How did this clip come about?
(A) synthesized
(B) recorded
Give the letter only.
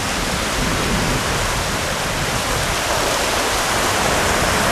A